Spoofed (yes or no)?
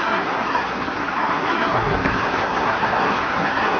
yes